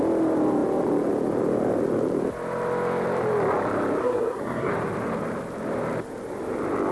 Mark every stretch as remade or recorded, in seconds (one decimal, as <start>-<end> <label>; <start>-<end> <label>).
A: 0.0-4.0 recorded; 4.0-4.7 remade; 4.7-6.9 recorded